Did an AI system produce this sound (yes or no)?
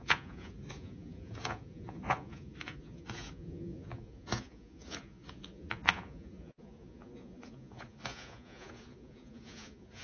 yes